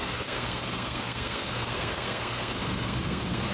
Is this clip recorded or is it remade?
remade